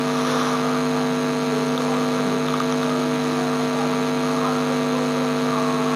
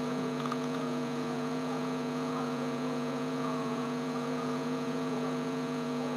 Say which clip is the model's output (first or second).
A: second